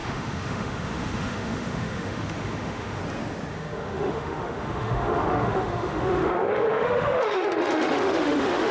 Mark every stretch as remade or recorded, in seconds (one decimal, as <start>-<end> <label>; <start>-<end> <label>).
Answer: 0.0-3.0 remade; 3.0-3.5 recorded; 3.5-8.7 remade